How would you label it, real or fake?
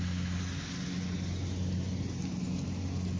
real